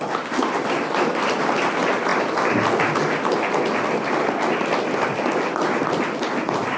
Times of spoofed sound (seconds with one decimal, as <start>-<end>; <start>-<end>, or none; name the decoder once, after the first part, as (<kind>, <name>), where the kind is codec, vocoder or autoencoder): none